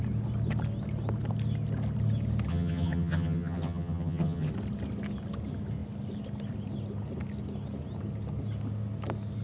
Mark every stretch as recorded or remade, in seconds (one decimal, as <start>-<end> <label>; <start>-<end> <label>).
0.0-2.5 recorded; 2.5-4.5 remade; 4.5-9.4 recorded